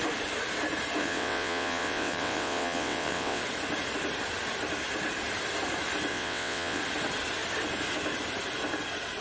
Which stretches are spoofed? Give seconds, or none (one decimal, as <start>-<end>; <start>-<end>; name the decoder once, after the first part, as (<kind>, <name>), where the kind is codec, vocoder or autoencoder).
1.0-3.4 (vocoder, WaveNeXt); 6.1-6.8